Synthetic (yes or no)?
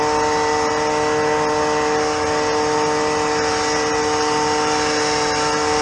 no